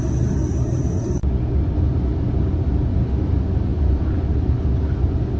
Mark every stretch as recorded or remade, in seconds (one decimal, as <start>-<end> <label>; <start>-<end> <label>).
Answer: 0.0-5.4 recorded